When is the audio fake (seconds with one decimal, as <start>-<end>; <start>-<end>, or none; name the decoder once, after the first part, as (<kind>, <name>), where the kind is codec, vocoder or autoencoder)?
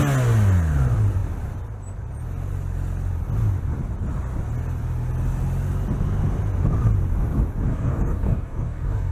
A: 7.7-9.1 (codec, DAC)